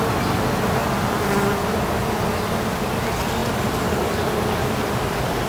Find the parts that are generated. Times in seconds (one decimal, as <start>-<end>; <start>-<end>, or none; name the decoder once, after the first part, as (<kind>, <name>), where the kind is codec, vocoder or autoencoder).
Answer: none